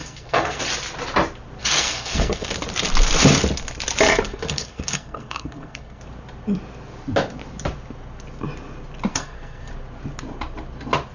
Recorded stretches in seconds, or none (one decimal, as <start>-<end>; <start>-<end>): 0.6-1.6; 2.5-4.3; 6.0-9.1; 9.7-11.1